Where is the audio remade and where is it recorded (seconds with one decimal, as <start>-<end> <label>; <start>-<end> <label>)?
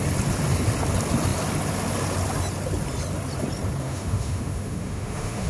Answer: 0.0-3.8 recorded; 3.8-5.5 remade